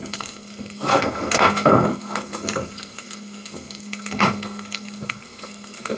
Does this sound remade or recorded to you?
remade